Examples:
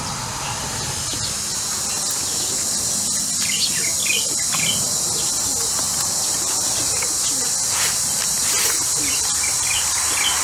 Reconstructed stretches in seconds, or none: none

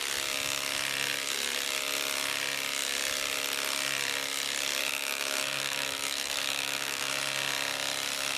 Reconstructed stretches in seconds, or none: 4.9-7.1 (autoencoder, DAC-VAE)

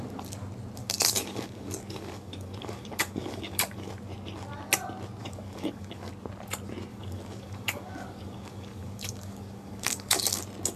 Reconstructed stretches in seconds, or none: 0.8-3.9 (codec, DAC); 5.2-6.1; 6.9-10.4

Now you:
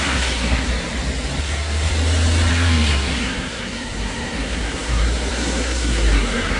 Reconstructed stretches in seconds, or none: 0.0-0.7 (codec, SNAC); 1.4-1.9; 2.5-6.6

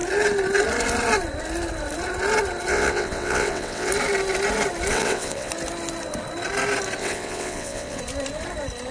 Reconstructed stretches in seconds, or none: 2.7-3.9 (vocoder, WaveNeXt); 4.9-5.5; 7.0-8.0